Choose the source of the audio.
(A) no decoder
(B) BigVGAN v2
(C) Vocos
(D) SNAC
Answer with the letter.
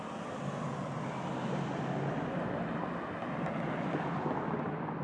A